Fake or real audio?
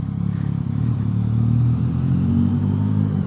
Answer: real